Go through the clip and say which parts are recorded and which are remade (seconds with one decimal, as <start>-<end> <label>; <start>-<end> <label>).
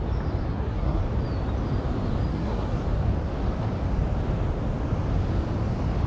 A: 0.0-0.5 recorded; 0.5-1.0 remade; 1.0-2.3 recorded; 2.3-2.8 remade; 2.8-6.1 recorded